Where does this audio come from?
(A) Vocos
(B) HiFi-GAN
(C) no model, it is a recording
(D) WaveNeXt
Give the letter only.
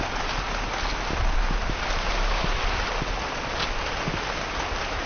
C